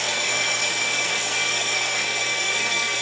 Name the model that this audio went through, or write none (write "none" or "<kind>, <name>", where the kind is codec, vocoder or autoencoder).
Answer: codec, SNAC